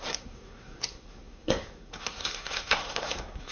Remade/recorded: remade